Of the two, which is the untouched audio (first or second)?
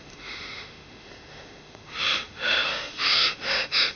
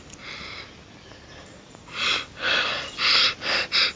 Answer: second